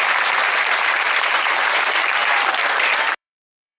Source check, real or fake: fake